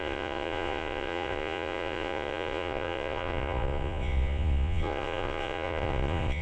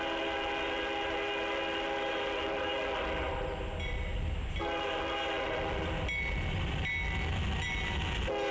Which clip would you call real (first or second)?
second